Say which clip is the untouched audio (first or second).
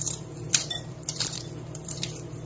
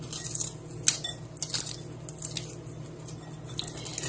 second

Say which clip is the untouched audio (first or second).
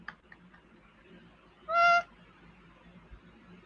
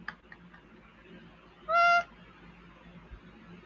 second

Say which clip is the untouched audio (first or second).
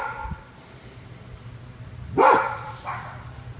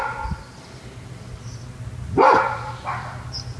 second